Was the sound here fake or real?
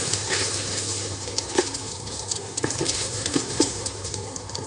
fake